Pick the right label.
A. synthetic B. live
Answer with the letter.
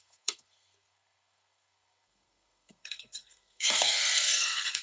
A